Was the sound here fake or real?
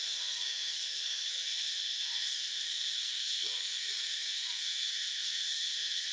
fake